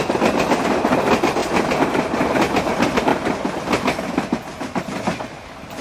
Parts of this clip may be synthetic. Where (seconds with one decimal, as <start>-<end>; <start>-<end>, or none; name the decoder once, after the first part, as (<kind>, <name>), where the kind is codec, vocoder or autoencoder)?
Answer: none